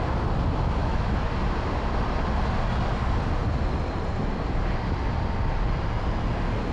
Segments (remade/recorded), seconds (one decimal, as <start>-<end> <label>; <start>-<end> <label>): 0.0-0.8 recorded; 0.8-1.3 remade; 1.3-6.7 recorded